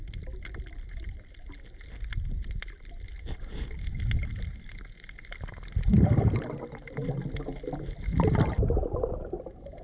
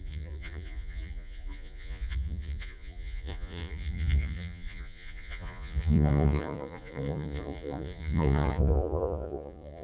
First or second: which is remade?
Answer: second